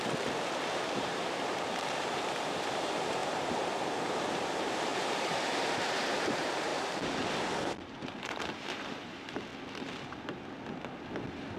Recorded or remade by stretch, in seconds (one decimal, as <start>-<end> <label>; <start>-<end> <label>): 0.0-3.2 remade; 3.2-4.0 recorded; 4.0-4.9 remade; 4.9-5.8 recorded; 5.8-6.7 remade; 6.7-7.8 recorded; 7.8-9.5 remade; 9.5-11.6 recorded